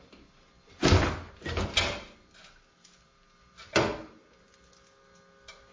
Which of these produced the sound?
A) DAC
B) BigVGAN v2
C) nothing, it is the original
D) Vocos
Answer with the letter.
C